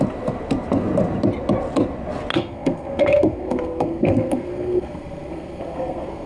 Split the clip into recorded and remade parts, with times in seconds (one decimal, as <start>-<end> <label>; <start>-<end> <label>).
0.0-2.3 recorded; 2.3-6.3 remade